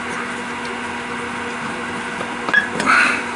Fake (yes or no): no